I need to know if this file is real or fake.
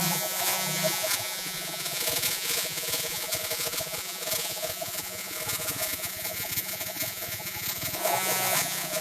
fake